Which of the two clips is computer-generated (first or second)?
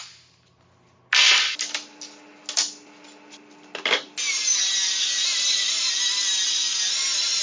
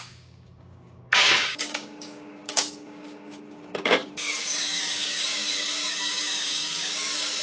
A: second